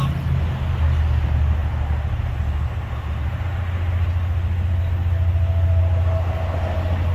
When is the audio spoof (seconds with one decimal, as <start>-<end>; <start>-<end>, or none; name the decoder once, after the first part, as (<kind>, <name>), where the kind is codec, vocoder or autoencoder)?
none